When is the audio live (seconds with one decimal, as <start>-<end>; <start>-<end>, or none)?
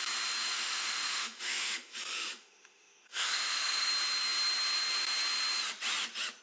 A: 0.0-0.5; 3.9-6.4